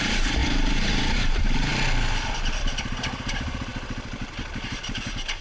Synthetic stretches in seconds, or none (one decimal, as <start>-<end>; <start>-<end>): 0.0-1.7; 2.8-3.7; 4.7-5.4